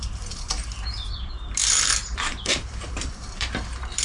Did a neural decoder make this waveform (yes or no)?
yes